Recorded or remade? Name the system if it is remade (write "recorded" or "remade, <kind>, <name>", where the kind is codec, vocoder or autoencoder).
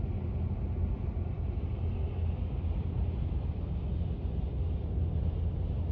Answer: recorded